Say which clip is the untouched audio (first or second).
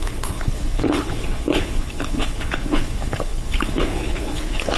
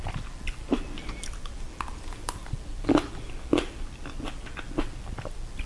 second